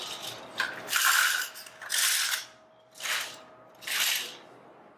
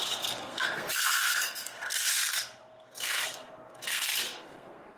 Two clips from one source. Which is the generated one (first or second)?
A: second